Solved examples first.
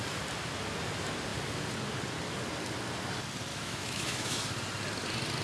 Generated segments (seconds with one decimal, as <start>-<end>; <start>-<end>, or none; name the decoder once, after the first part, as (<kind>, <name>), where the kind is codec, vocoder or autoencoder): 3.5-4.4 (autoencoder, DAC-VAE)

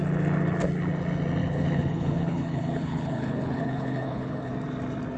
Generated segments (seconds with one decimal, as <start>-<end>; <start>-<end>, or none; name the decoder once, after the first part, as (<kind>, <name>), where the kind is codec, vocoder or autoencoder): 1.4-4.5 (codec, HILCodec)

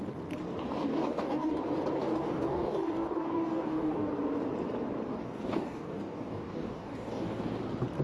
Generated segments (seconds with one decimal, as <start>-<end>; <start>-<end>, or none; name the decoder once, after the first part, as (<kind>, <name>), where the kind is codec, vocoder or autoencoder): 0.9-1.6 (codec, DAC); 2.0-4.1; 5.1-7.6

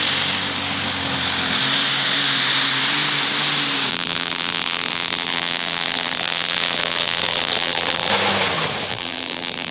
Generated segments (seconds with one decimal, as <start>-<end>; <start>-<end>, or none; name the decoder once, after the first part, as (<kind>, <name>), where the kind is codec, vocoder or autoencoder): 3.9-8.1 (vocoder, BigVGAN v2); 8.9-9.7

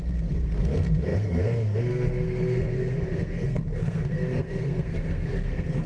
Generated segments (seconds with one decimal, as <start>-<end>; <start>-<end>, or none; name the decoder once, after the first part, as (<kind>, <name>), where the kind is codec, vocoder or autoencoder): 0.0-5.9 (codec, SNAC)

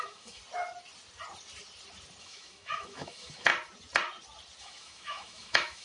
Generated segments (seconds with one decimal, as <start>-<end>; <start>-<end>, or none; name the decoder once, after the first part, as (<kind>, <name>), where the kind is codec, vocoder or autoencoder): 0.0-0.4 (autoencoder, DAC-VAE); 2.2-3.5; 4.6-5.8